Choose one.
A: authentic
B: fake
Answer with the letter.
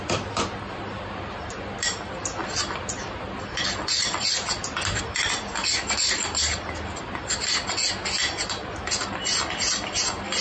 A